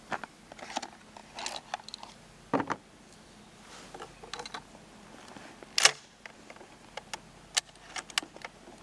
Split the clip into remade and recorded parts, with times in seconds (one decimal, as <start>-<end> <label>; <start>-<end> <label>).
0.0-8.8 recorded